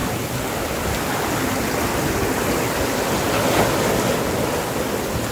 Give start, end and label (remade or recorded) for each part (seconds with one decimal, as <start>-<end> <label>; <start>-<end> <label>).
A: 0.0-5.3 recorded